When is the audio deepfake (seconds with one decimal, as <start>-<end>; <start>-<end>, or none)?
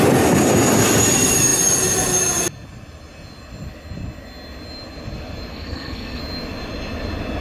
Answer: 5.5-6.2